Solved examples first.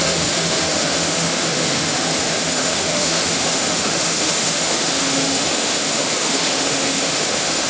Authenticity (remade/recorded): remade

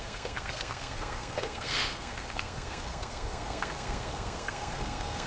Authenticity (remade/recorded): remade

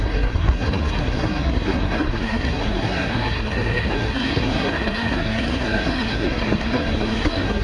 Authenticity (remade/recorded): remade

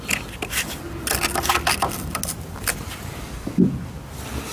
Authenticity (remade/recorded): recorded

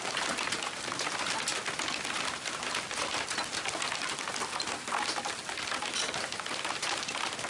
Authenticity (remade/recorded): recorded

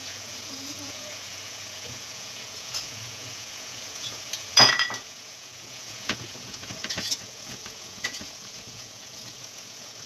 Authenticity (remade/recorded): remade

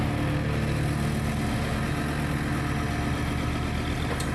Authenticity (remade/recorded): recorded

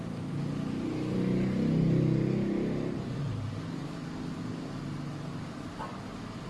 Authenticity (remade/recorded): recorded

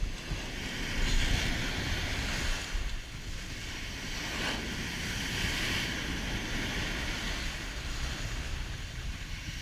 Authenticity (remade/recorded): recorded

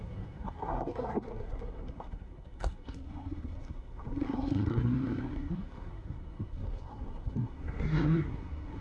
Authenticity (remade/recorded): remade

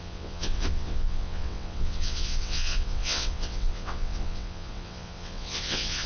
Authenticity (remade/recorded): remade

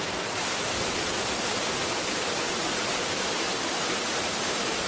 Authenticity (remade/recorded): recorded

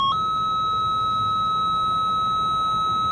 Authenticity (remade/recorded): recorded